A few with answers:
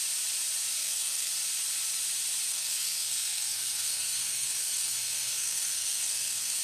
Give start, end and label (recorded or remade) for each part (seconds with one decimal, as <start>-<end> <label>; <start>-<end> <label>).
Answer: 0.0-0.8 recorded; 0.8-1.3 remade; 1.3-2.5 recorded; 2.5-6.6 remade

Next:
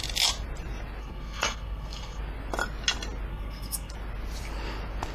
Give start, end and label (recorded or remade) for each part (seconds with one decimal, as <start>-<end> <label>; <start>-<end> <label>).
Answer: 0.0-1.0 recorded; 1.0-2.2 remade; 2.2-3.3 recorded; 3.3-3.9 remade; 3.9-5.1 recorded

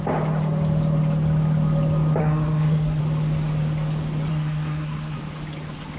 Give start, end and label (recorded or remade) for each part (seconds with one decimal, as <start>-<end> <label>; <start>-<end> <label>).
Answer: 0.0-2.2 recorded; 2.2-3.0 remade; 3.0-4.3 recorded; 4.3-5.2 remade; 5.2-6.0 recorded

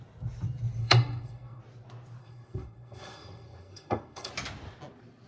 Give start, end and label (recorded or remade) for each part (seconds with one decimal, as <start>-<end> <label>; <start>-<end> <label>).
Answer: 0.0-0.8 recorded; 0.8-1.6 remade; 1.6-2.2 recorded; 2.2-4.3 remade; 4.3-5.3 recorded

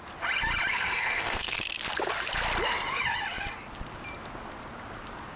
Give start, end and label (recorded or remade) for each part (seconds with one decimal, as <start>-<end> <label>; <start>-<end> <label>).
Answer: 0.0-0.7 recorded; 0.7-1.6 remade; 1.6-5.4 recorded